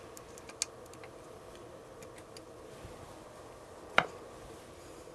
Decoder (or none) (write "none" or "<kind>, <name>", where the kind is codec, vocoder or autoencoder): none